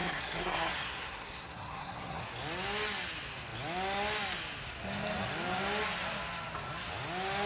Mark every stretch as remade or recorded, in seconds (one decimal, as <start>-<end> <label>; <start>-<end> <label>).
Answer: 0.0-2.2 remade; 2.2-7.5 recorded